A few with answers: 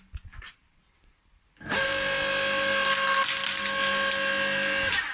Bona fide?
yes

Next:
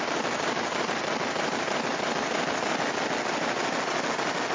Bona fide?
no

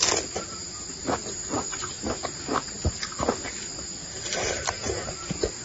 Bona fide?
yes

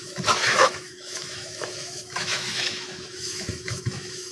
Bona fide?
no